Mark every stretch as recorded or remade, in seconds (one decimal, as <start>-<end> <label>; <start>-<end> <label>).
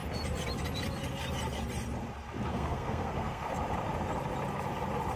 0.0-2.5 recorded; 2.5-3.4 remade; 3.4-5.2 recorded